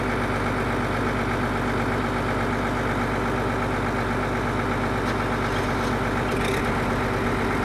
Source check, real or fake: real